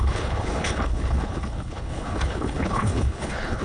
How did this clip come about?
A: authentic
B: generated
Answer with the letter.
B